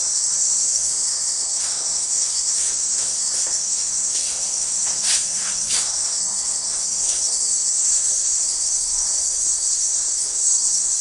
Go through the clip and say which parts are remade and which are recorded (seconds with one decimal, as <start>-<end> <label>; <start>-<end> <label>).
0.0-11.0 remade